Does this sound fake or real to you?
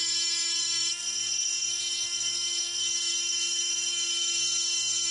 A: fake